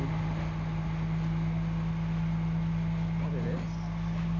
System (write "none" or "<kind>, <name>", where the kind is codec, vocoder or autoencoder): none